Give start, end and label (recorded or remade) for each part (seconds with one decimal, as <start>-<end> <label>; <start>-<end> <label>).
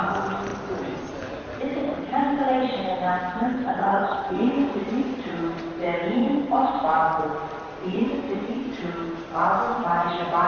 0.0-3.5 recorded; 3.5-4.3 remade; 4.3-10.5 recorded